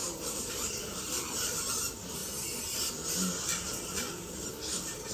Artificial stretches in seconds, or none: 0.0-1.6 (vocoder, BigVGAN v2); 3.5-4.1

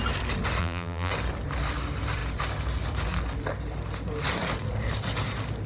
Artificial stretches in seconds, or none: 0.6-1.1 (vocoder, BigVGAN v2)